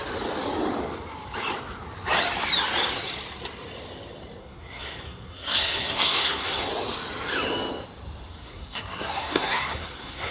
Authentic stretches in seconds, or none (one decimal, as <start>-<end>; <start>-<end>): 0.0-4.4; 6.7-8.3